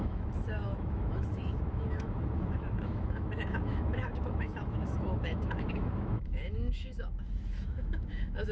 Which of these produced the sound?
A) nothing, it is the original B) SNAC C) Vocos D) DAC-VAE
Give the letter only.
D